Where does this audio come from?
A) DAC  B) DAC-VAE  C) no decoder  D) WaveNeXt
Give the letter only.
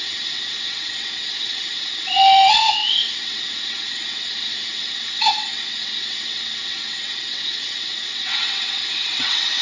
D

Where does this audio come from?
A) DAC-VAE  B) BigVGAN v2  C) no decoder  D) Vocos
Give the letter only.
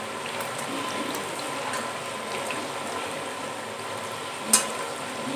C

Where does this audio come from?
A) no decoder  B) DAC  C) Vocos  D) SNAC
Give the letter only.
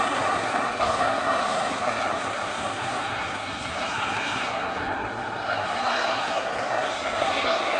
D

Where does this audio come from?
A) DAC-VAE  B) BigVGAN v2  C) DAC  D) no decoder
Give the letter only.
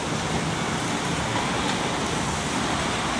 D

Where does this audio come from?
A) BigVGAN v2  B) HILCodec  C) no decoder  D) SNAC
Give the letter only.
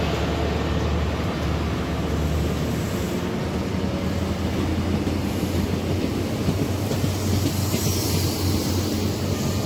C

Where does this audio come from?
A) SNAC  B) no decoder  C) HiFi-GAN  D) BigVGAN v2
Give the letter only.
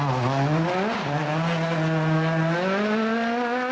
B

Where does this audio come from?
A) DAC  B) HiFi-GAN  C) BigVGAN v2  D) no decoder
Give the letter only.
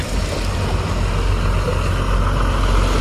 D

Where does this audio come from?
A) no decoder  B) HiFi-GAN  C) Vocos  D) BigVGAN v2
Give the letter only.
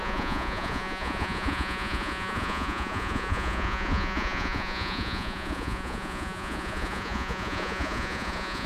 C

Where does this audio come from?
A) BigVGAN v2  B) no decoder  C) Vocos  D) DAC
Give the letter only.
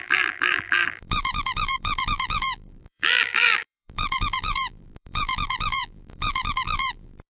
A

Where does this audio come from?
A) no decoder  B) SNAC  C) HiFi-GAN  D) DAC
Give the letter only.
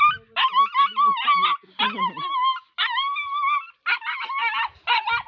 A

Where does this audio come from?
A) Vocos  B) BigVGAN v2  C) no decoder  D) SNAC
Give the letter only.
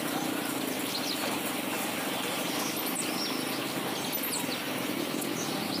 C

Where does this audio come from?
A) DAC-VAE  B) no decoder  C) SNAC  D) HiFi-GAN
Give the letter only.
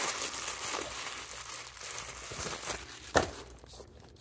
B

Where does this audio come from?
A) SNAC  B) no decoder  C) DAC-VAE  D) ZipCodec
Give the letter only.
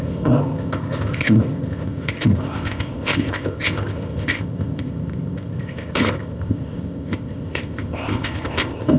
D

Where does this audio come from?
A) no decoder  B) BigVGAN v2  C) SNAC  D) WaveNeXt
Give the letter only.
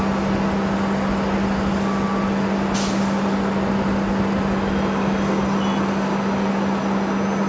A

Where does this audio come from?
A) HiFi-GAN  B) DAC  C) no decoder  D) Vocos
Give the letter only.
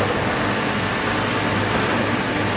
C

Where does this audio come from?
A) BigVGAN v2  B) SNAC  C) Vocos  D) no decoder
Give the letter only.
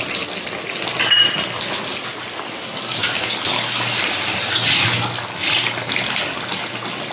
D